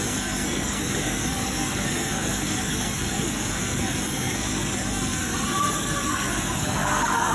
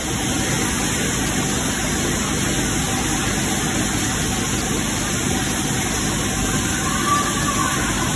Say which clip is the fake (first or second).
first